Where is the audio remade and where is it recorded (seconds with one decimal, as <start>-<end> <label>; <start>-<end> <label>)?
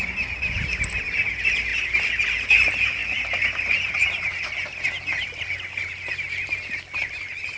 0.0-7.6 recorded